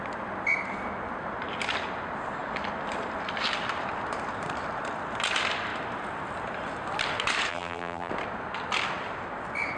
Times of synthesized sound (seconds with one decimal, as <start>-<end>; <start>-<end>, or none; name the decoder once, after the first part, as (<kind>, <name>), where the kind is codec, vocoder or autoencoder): 7.5-8.1 (vocoder, BigVGAN v2)